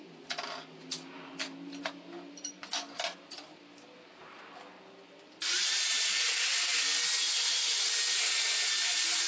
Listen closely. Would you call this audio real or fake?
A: real